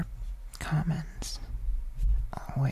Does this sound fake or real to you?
real